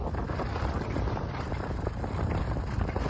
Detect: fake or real real